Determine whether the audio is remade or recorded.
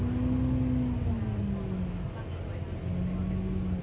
recorded